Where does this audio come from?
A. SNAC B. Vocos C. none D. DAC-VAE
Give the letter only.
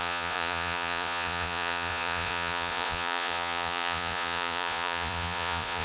B